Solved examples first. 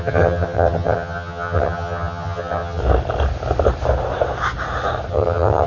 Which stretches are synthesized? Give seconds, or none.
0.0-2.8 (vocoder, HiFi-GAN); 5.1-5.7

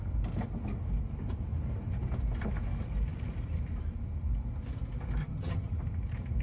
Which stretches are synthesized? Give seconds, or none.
5.2-5.7 (vocoder, HiFi-GAN)

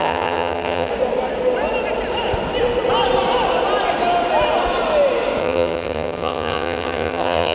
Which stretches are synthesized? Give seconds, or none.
0.0-0.9 (vocoder, HiFi-GAN); 5.4-7.5

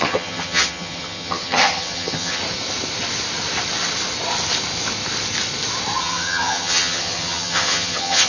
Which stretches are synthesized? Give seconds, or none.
0.0-2.4 (vocoder, HiFi-GAN); 6.0-8.3

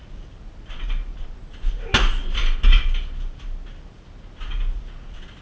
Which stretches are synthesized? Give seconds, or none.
none